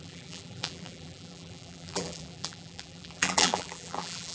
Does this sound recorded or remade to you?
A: remade